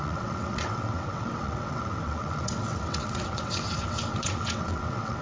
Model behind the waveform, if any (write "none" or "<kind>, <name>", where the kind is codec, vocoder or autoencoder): vocoder, WaveNeXt